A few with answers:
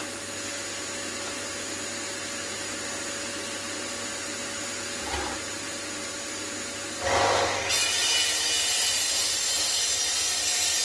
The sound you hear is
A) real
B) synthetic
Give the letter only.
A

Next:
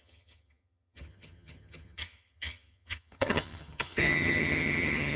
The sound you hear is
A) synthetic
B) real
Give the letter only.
A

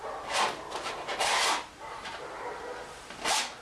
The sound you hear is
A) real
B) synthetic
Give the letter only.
B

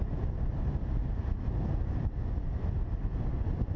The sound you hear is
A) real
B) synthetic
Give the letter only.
A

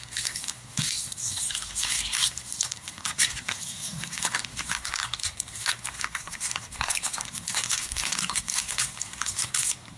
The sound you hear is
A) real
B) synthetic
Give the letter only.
B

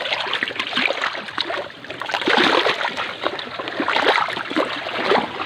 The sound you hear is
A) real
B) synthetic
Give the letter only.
A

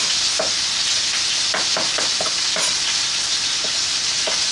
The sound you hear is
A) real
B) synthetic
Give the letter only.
A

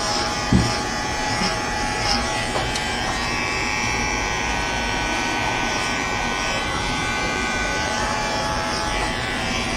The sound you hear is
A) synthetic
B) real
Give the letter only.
A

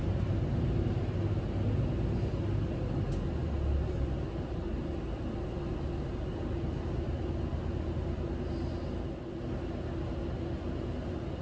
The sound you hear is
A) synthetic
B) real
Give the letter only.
B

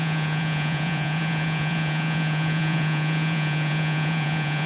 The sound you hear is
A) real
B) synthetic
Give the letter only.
B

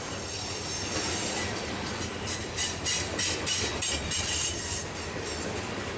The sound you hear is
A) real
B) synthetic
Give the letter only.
A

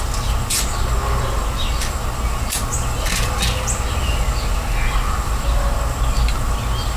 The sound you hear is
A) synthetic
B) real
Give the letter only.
B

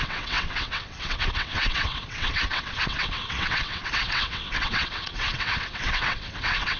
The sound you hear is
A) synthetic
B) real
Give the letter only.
A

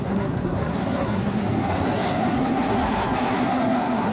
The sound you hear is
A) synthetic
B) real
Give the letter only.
A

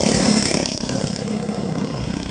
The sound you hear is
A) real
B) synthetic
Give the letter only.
B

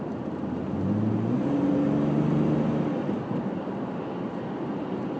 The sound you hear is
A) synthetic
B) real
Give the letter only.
B